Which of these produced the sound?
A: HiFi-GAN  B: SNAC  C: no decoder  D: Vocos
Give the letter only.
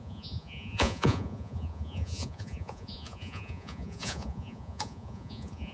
D